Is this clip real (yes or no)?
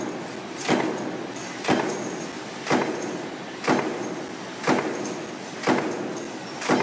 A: yes